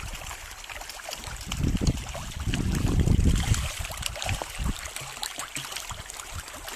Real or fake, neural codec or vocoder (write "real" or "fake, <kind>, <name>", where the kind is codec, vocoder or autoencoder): real